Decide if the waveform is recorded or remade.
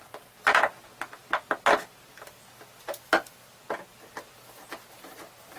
recorded